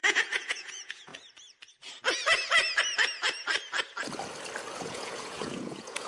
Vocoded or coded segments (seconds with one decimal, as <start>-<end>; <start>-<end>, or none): 0.0-1.1; 4.8-6.1